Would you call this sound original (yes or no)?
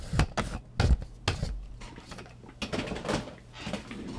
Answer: yes